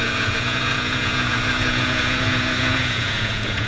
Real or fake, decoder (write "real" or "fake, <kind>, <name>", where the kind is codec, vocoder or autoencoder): fake, vocoder, Vocos